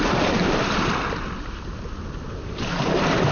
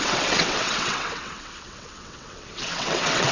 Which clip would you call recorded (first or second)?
first